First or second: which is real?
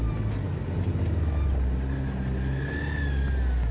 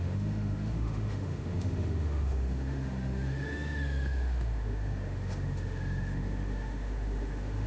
first